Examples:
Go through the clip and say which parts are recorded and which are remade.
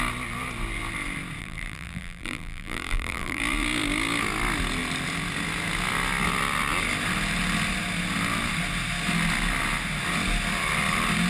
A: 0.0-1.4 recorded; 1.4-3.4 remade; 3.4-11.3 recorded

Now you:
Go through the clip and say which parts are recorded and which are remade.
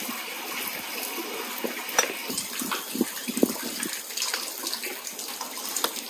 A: 0.0-6.1 recorded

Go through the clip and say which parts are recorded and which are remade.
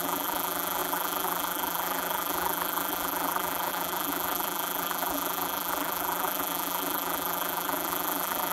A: 0.0-8.5 remade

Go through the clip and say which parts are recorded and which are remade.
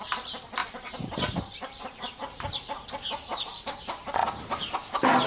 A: 0.0-0.6 recorded; 0.6-3.8 remade; 3.8-5.3 recorded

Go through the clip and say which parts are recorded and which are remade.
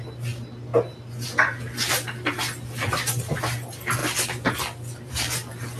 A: 0.0-5.8 recorded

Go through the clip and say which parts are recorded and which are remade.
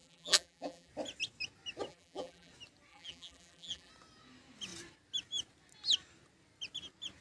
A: 0.0-0.9 remade; 0.9-1.9 recorded; 1.9-2.5 remade; 2.5-2.9 recorded; 2.9-3.9 remade; 3.9-7.2 recorded